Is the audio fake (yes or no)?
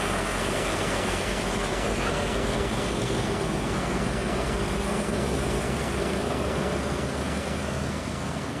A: yes